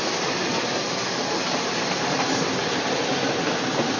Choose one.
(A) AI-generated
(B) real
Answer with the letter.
B